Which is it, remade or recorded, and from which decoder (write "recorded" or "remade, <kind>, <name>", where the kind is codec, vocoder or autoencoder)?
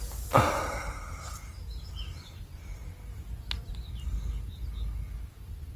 recorded